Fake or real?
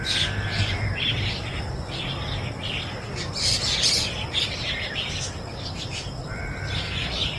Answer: real